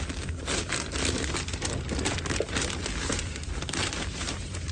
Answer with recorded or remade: recorded